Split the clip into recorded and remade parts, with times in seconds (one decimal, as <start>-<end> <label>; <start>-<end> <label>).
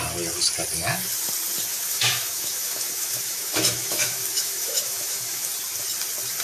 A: 0.0-1.7 recorded; 1.7-5.5 remade; 5.5-6.4 recorded